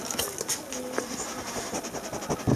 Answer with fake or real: real